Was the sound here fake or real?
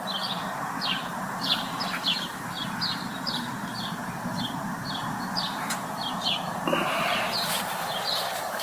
fake